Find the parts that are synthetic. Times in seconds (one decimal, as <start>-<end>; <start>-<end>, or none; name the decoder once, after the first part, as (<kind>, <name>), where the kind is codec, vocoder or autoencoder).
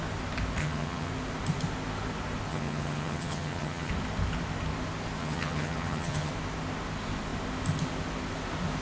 0.6-1.1 (vocoder, HiFi-GAN); 2.5-3.9; 5.2-6.3